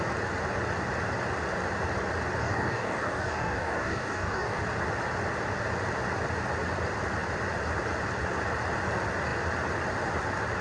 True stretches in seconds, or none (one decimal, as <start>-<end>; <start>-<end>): 0.0-2.4; 4.6-10.6